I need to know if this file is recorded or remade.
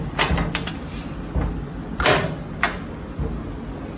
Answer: recorded